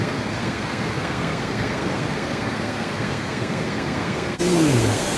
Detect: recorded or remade remade